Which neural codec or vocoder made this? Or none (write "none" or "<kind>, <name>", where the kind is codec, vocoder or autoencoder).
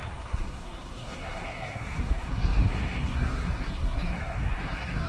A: codec, SNAC